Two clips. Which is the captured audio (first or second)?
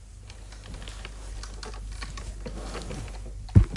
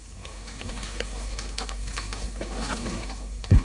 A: first